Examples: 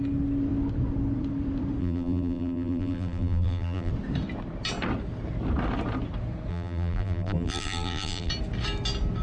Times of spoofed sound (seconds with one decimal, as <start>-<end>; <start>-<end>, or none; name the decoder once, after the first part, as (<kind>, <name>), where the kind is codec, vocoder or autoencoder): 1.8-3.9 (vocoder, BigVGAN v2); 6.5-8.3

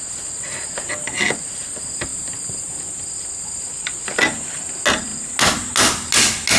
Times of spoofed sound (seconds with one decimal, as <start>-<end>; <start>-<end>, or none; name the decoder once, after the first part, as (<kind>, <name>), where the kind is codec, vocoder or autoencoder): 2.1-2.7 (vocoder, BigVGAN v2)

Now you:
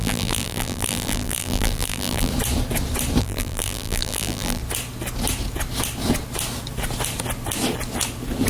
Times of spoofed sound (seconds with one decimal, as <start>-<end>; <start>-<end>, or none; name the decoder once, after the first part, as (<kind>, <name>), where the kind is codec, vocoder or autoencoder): 0.0-2.3 (vocoder, BigVGAN v2); 3.2-4.6

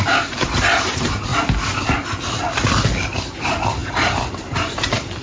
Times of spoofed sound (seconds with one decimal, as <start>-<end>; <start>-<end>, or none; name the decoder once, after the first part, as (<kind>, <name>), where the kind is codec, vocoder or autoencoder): 0.0-1.3 (vocoder, BigVGAN v2); 3.4-5.2

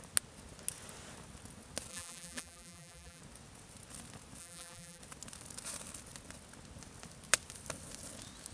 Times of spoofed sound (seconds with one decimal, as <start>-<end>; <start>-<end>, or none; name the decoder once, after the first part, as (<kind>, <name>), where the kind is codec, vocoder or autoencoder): 1.9-3.2 (vocoder, BigVGAN v2); 4.4-5.0

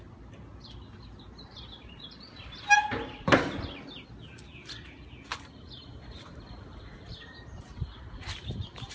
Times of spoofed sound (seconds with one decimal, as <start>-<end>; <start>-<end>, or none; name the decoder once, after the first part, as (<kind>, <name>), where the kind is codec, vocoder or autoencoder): 5.3-7.9 (vocoder, BigVGAN v2)